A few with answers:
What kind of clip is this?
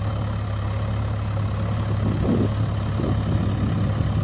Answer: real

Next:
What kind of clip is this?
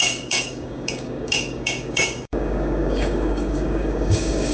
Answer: fake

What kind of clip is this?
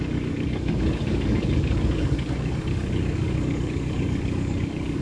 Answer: fake